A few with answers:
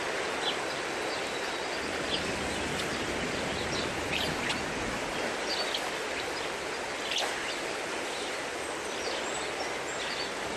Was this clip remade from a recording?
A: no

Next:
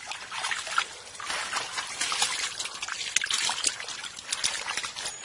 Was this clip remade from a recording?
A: no